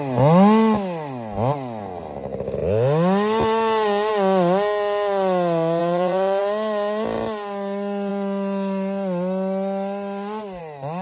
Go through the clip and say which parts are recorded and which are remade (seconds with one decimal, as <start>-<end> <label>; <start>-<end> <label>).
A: 0.0-5.8 recorded; 5.8-6.4 remade; 6.4-11.0 recorded